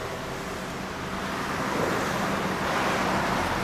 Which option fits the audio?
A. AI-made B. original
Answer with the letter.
B